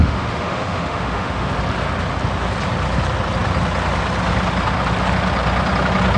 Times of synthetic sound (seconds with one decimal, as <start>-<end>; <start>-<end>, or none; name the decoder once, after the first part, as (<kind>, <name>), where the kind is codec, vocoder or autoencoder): 0.0-1.5 (autoencoder, DAC-VAE)